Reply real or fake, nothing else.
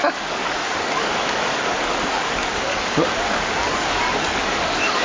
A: fake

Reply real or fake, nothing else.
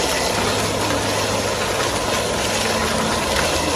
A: real